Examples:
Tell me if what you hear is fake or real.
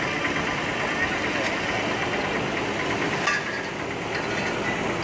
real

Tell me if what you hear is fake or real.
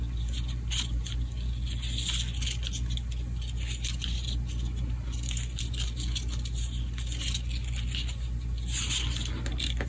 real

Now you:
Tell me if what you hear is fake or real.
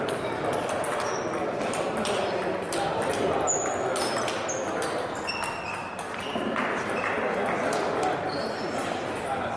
real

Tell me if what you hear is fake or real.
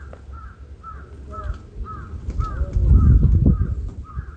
real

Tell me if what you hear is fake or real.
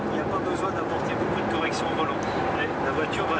real